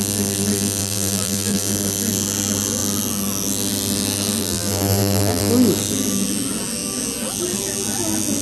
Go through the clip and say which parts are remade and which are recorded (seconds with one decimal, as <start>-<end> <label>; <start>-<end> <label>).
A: 0.0-0.8 recorded; 0.8-1.7 remade; 1.7-4.4 recorded; 4.4-5.4 remade; 5.4-8.4 recorded